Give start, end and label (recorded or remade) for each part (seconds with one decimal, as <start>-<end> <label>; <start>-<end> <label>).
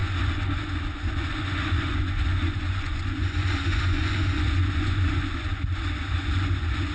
0.0-6.9 remade